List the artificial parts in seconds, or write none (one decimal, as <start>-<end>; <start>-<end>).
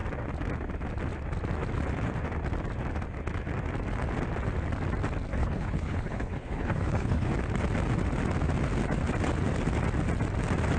5.3-7.3